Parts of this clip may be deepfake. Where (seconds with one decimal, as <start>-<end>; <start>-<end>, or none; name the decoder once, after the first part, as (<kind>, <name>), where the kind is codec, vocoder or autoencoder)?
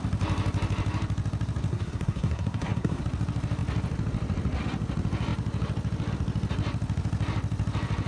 1.7-3.0 (codec, SNAC)